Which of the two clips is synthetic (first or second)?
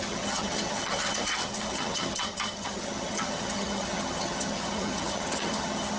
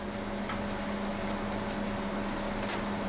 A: first